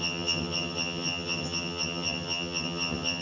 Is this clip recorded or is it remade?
remade